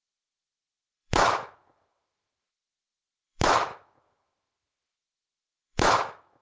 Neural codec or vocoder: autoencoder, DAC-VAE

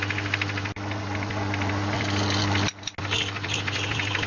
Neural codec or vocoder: none